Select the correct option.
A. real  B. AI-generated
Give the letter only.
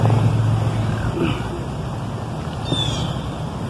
A